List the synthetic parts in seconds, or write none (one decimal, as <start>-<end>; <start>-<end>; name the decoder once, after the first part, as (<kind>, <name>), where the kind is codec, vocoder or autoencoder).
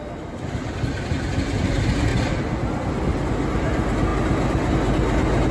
none